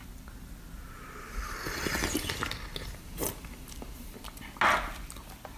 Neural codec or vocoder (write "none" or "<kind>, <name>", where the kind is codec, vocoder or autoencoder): none